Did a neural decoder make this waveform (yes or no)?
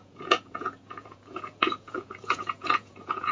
yes